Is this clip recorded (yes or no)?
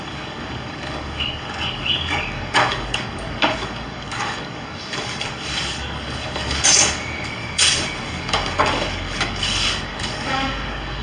no